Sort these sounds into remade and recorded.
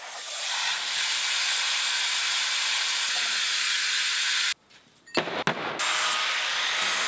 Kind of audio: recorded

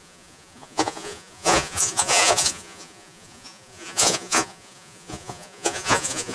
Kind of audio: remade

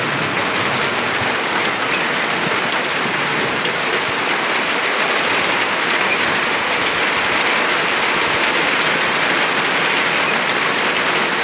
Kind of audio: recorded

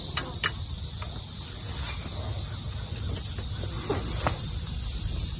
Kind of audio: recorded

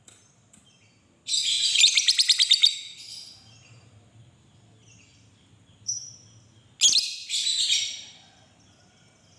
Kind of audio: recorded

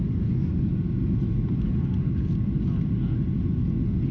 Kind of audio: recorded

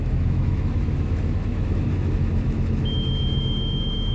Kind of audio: remade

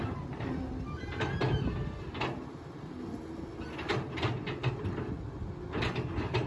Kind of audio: recorded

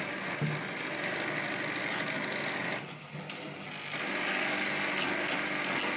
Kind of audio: recorded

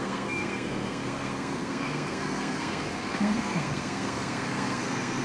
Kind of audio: remade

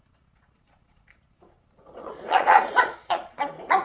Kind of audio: remade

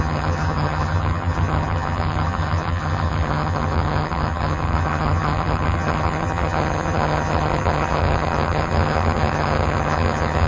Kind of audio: remade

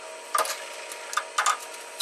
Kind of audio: recorded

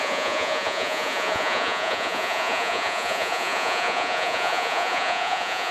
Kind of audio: remade